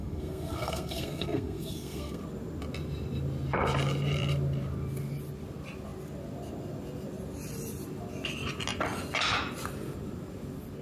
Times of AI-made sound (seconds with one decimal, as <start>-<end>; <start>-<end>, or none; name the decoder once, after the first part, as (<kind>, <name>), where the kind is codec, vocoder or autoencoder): 0.0-2.2 (codec, SNAC)